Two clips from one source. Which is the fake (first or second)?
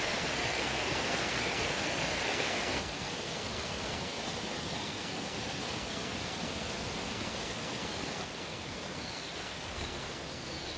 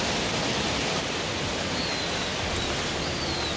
first